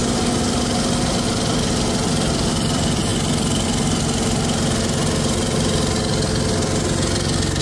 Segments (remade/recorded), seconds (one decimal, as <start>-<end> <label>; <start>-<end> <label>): 0.0-1.1 recorded; 1.1-3.1 remade; 3.1-7.6 recorded